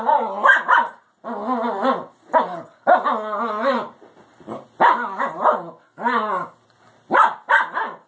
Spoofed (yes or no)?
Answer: no